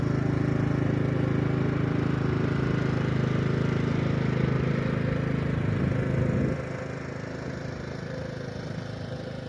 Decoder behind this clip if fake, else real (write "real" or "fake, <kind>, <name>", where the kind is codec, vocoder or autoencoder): real